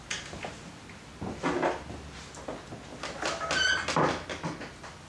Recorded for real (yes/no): yes